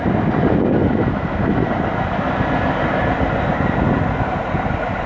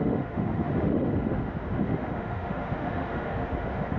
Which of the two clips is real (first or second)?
first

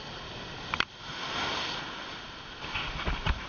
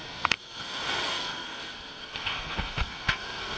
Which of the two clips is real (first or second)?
first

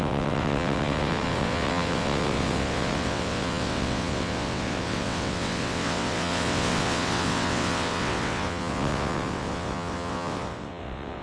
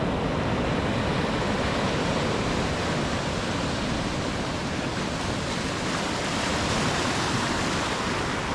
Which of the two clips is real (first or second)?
second